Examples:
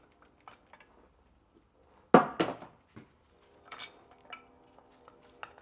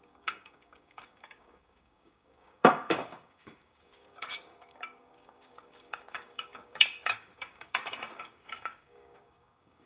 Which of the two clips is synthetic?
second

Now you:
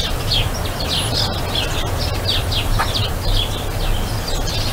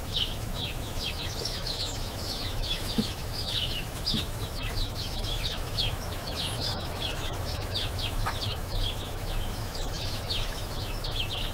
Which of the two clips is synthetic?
second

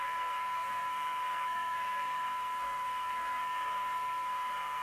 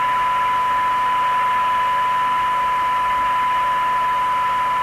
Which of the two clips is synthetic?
first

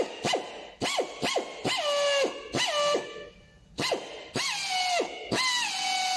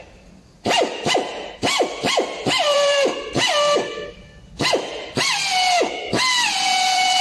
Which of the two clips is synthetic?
second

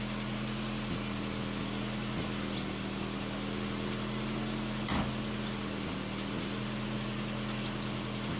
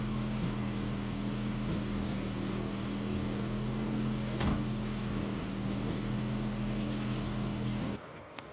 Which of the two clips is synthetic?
second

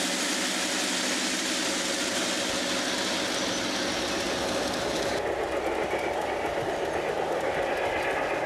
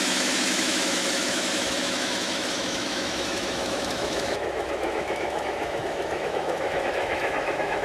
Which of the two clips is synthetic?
second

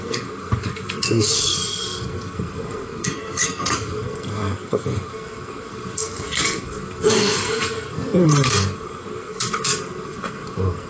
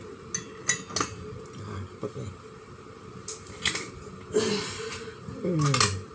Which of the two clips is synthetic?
first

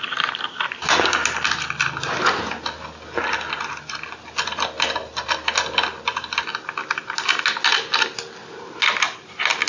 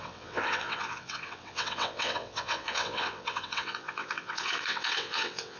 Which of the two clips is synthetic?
second